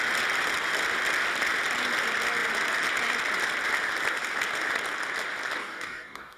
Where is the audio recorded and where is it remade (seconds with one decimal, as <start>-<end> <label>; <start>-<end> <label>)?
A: 0.0-5.6 recorded; 5.6-6.4 remade